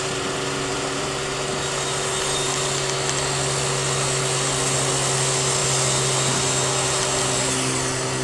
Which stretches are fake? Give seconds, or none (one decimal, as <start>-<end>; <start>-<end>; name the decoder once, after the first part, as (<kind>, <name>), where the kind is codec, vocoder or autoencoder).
0.7-1.5 (vocoder, BigVGAN v2)